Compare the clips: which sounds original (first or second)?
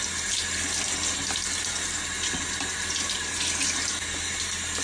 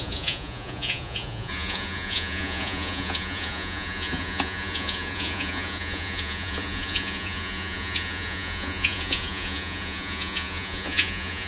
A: first